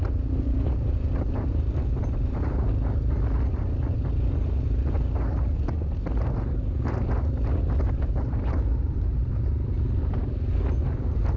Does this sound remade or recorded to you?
recorded